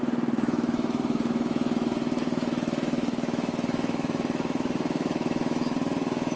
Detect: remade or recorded remade